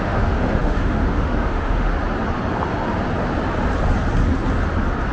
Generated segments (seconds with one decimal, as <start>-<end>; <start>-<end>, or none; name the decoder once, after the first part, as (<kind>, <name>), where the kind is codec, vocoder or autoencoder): 0.0-1.9 (autoencoder, DAC-VAE)